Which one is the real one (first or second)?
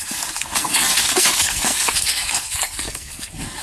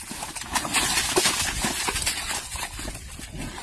second